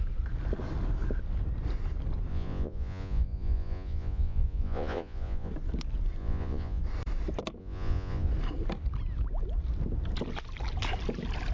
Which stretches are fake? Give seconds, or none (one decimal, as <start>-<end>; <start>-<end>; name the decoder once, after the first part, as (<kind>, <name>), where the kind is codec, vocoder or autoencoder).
2.3-5.5 (vocoder, Vocos); 6.2-6.8; 7.6-8.3